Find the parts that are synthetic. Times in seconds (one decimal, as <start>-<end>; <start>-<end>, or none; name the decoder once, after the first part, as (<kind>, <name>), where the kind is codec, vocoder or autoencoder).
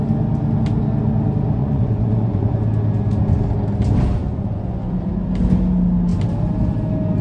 1.6-2.5 (vocoder, Vocos); 4.2-5.1